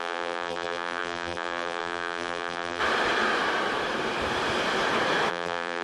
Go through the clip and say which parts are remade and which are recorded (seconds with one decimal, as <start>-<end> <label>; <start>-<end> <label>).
0.0-2.8 remade; 2.8-5.3 recorded; 5.3-5.8 remade